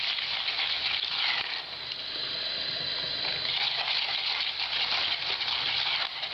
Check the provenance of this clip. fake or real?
real